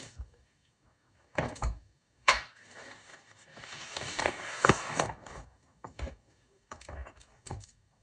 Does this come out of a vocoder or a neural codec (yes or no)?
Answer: yes